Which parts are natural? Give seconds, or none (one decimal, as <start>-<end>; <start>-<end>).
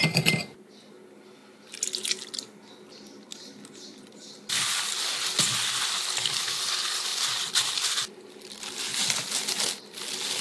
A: 0.0-10.4